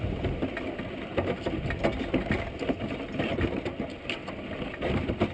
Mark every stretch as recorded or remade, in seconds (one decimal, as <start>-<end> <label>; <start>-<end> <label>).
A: 0.0-5.3 recorded